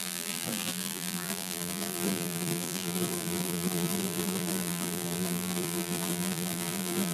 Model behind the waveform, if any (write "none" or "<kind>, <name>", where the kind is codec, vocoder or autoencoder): vocoder, BigVGAN v2